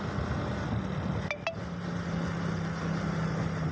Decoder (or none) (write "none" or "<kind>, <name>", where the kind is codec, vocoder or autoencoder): none